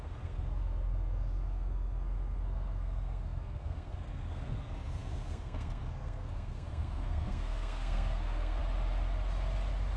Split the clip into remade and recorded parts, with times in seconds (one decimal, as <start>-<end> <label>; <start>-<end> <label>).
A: 0.0-8.6 remade; 8.6-10.0 recorded